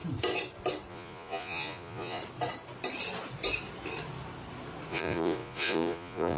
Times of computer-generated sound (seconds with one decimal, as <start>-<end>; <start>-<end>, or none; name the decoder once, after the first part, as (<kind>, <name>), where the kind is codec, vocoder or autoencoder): 0.9-2.2 (vocoder, Vocos); 4.9-6.4